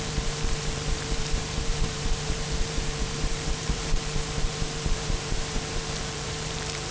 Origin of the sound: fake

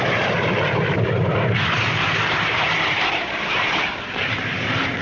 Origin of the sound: fake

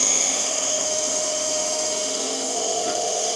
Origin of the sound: fake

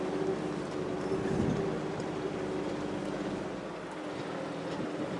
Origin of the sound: real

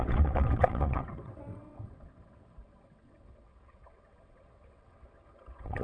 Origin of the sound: fake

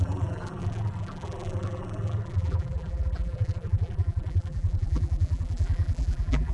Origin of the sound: fake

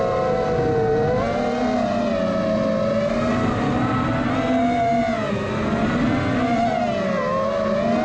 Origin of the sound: real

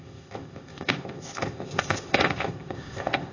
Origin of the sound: fake